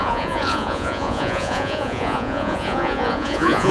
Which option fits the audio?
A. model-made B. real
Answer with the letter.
A